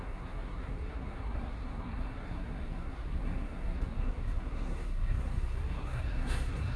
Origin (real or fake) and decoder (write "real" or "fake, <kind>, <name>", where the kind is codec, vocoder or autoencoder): fake, codec, SNAC